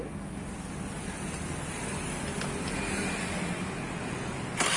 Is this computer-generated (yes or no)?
no